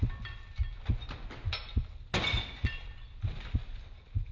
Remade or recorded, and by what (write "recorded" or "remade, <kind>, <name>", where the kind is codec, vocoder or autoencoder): recorded